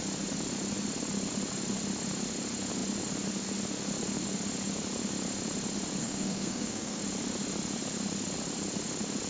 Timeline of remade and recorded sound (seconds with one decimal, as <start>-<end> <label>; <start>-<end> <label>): 0.0-6.0 recorded; 6.0-7.0 remade; 7.0-9.3 recorded